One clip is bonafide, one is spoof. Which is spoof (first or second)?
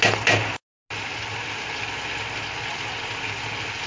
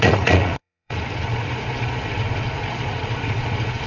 second